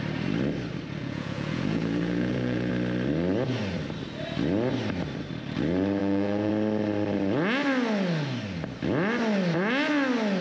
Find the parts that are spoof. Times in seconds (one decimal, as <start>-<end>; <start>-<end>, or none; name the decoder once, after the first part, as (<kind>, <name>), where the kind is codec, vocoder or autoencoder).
1.0-2.7 (vocoder, Vocos); 6.0-6.5